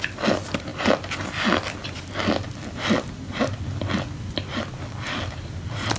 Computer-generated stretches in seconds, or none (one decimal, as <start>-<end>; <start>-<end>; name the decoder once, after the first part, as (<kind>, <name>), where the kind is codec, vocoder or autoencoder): none